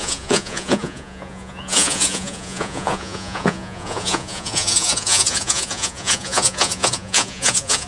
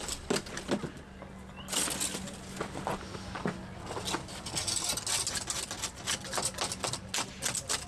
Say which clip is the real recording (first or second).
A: second